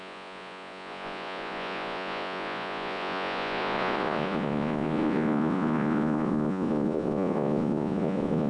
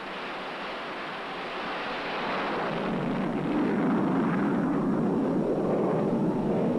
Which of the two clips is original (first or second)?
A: second